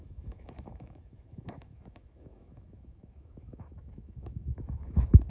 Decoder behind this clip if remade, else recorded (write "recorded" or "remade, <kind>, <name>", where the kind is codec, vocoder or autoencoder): remade, autoencoder, DAC-VAE